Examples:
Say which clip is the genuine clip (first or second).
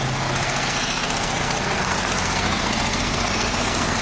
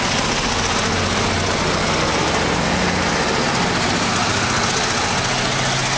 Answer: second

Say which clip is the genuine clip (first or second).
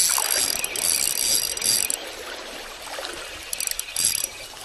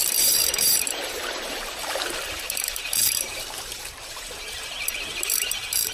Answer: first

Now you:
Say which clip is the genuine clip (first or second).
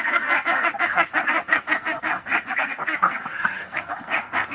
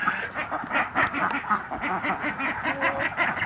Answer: second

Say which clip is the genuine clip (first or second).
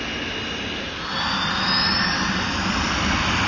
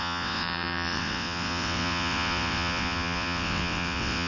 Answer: first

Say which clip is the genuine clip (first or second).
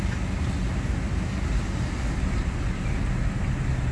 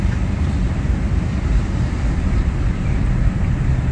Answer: first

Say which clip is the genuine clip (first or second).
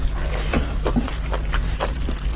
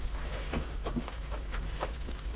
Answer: first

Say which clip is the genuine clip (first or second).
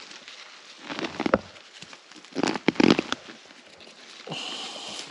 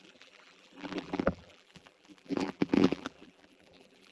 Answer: first